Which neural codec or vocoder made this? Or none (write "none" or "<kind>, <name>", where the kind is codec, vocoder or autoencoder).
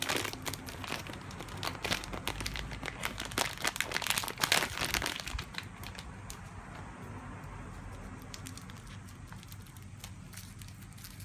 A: none